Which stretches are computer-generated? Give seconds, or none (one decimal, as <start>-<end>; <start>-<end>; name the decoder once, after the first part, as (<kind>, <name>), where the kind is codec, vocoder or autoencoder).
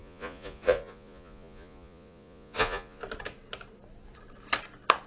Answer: 0.0-3.0 (vocoder, Vocos)